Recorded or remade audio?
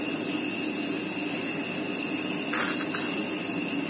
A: recorded